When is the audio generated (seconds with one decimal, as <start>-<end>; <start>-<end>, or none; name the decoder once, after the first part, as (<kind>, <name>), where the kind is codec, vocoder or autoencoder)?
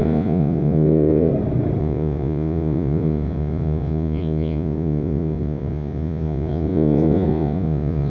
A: 0.0-1.3 (vocoder, Vocos); 1.8-8.1